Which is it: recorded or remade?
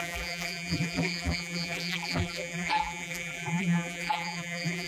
remade